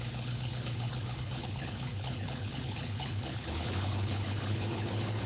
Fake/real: fake